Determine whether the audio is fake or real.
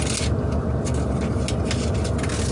real